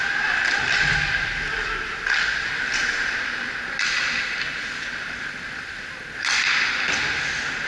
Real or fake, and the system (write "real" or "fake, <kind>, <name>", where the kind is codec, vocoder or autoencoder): real